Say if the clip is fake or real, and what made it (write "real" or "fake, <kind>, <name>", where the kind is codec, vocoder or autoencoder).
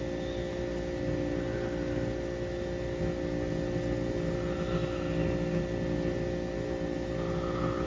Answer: real